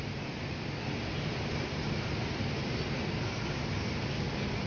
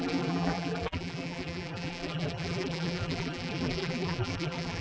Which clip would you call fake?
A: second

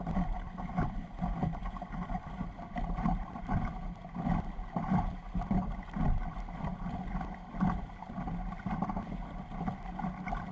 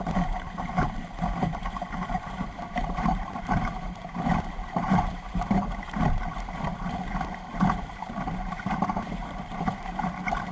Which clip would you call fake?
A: second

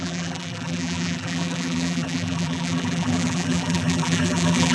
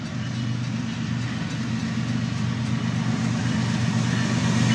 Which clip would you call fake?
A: first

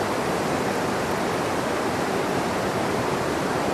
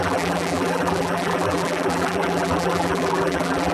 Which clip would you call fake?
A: second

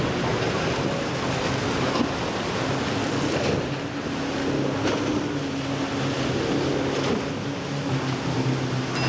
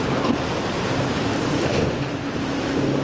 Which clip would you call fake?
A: second